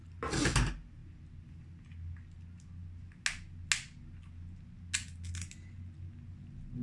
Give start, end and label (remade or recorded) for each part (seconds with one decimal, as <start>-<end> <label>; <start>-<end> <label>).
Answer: 0.0-6.8 recorded